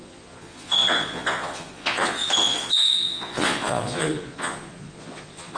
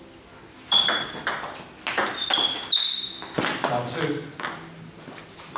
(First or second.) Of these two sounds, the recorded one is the second